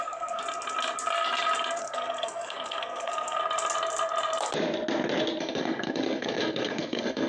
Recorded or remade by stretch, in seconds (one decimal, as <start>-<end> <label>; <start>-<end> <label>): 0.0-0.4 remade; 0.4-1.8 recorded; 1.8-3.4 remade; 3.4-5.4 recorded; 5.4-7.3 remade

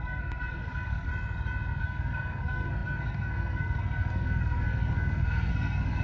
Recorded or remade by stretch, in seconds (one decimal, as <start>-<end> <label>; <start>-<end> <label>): 0.0-1.1 remade; 1.1-1.8 recorded; 1.8-6.0 remade

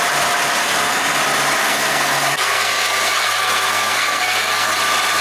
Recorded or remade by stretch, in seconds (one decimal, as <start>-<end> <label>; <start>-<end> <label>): 0.0-0.6 recorded; 0.6-1.2 remade; 1.2-1.6 recorded; 1.6-4.7 remade; 4.7-5.2 recorded

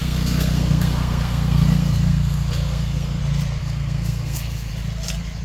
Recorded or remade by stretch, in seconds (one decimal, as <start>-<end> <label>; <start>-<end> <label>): 0.0-3.2 remade; 3.2-3.6 recorded; 3.6-4.7 remade; 4.7-5.4 recorded

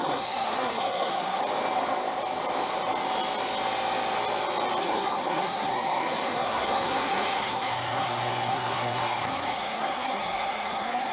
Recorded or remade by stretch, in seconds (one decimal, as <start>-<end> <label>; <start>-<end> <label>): 0.0-1.4 remade; 1.4-4.8 recorded; 4.8-11.1 remade

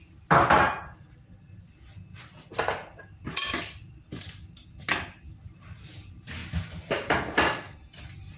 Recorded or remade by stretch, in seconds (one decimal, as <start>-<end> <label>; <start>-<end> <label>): 0.0-8.4 recorded